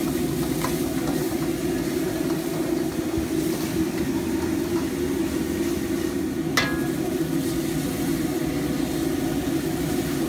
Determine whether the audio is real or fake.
real